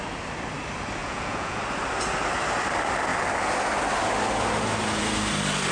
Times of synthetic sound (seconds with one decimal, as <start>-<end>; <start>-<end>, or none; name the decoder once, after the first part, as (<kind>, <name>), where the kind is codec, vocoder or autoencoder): 1.0-1.6 (vocoder, Vocos)

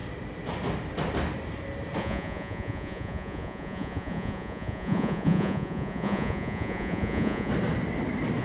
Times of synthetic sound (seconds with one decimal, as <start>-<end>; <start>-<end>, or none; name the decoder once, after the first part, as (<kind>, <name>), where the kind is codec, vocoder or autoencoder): 2.0-7.5 (vocoder, Vocos)

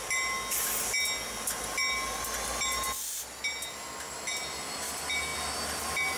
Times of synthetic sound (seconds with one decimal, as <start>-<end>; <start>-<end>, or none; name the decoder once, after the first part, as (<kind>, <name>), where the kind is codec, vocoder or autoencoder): none

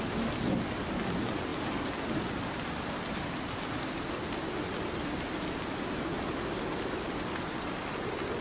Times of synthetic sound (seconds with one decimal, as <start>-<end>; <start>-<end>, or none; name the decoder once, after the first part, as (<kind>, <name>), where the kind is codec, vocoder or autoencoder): none

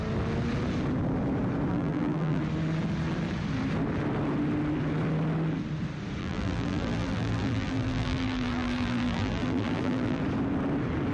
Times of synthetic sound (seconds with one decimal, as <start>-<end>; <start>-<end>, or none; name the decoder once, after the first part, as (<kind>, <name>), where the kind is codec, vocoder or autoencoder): 1.7-2.4 (vocoder, BigVGAN v2); 6.2-10.2